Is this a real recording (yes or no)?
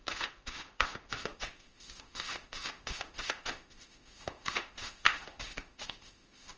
no